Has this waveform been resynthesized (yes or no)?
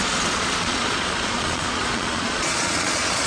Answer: yes